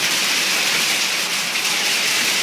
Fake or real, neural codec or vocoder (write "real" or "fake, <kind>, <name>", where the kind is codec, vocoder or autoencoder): real